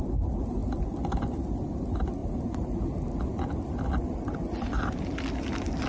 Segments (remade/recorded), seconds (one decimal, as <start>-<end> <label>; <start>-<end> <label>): 0.0-5.9 recorded